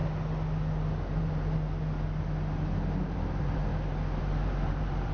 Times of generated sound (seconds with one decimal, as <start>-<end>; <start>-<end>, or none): 3.1-3.7; 4.2-5.1